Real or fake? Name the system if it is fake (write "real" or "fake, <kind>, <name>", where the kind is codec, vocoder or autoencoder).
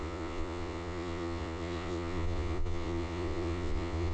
fake, vocoder, Vocos